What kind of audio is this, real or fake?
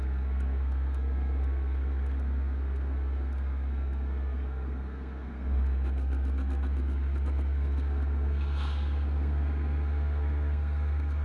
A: fake